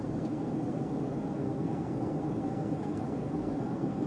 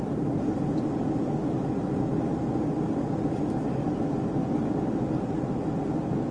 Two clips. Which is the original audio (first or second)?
second